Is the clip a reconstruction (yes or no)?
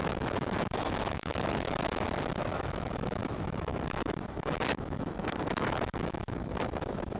yes